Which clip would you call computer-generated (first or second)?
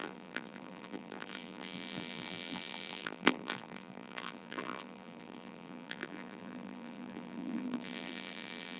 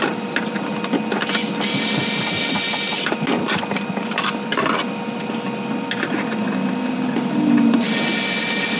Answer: first